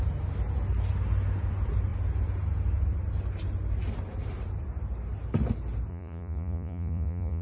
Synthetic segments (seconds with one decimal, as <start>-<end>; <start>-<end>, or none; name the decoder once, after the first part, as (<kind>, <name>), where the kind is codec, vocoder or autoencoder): 5.9-7.4 (vocoder, Vocos)